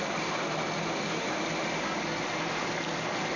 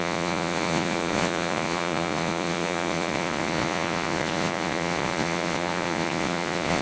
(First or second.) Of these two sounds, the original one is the first